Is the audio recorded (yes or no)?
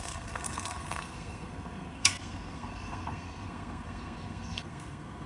no